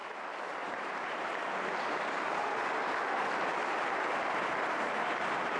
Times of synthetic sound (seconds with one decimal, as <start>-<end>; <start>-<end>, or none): 0.7-1.3; 4.7-5.6